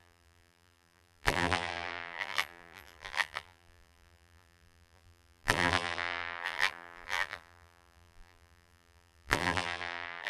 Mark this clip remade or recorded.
remade